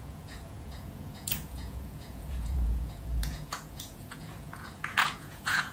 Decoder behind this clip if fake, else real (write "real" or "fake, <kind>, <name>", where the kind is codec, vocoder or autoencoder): fake, vocoder, Vocos